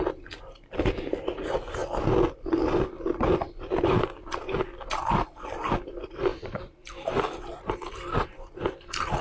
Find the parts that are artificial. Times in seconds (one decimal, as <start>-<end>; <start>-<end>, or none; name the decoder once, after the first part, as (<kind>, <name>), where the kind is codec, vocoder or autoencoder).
6.3-7.3 (vocoder, BigVGAN v2)